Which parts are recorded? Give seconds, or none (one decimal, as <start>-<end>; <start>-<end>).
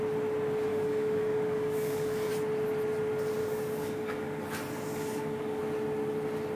0.0-0.7; 2.3-3.4; 4.4-4.9; 5.6-6.6